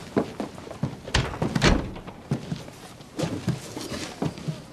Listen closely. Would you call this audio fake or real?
real